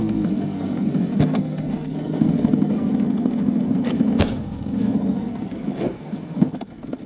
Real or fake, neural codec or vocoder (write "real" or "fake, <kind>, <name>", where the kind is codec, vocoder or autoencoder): fake, codec, SNAC